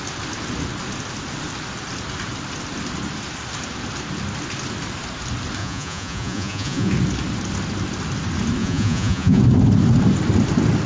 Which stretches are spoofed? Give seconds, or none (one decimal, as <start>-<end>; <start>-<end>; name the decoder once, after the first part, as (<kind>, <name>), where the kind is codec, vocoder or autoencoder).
5.6-6.9 (vocoder, Vocos); 8.6-9.4